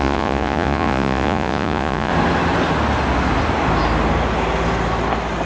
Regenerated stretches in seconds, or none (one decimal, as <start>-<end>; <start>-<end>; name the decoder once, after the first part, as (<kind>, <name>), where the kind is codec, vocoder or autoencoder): 0.0-2.1 (vocoder, Vocos)